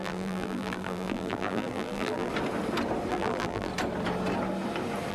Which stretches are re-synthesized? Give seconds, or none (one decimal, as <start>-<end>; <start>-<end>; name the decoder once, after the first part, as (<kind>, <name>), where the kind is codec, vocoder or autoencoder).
0.0-2.3 (vocoder, BigVGAN v2); 3.1-3.7